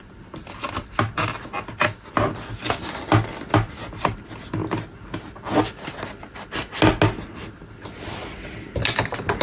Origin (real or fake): real